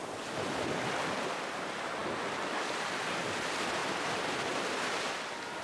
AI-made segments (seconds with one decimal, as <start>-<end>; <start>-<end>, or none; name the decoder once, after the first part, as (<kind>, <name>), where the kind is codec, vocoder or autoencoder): none